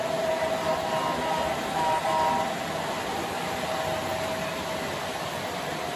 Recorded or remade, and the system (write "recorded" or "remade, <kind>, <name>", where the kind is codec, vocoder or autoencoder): recorded